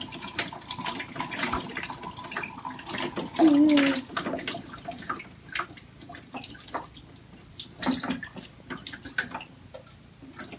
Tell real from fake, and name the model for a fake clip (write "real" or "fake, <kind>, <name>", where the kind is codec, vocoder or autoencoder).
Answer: real